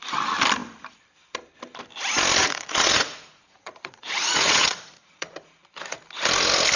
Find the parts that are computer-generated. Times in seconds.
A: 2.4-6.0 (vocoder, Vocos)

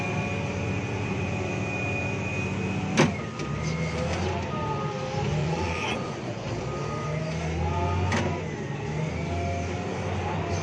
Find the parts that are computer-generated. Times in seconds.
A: 5.4-6.5 (vocoder, Vocos)

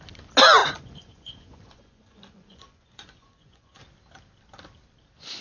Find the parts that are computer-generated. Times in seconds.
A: 0.6-3.8 (vocoder, Vocos)

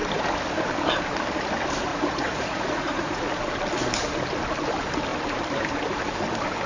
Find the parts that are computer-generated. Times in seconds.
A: 1.9-3.2 (vocoder, Vocos)

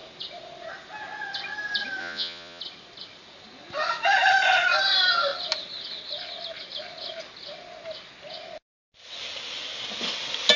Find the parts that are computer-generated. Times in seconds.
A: 2.0-2.6 (vocoder, Vocos)

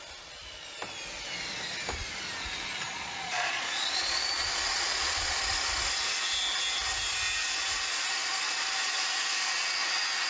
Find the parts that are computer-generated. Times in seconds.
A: 2.9-5.5 (vocoder, Vocos)

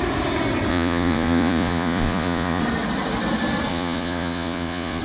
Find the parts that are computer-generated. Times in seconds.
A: 0.7-2.6 (vocoder, Vocos); 3.7-5.0